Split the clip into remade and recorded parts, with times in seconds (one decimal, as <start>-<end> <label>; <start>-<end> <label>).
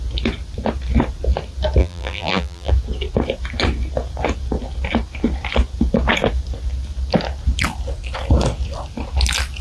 0.0-1.8 recorded; 1.8-2.7 remade; 2.7-9.6 recorded